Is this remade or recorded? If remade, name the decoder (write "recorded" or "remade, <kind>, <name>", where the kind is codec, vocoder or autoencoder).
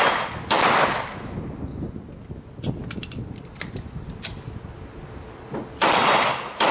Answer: recorded